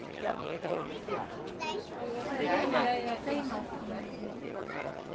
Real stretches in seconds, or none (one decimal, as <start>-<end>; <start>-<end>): 0.9-4.0